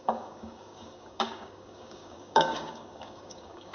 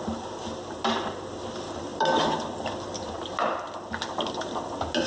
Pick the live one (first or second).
second